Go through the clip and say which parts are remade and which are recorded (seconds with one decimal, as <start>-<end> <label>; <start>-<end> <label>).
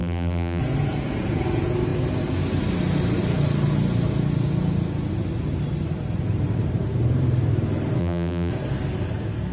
0.0-0.6 remade; 0.6-8.0 recorded; 8.0-8.5 remade; 8.5-9.5 recorded